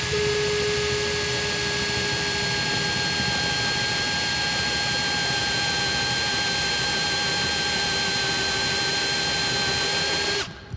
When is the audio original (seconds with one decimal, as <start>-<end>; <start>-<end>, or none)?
0.0-10.8